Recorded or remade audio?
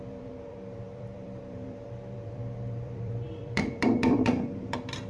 remade